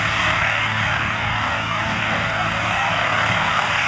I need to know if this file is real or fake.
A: fake